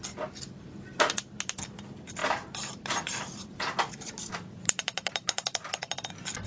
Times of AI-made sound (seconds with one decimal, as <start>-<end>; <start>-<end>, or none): 2.2-6.1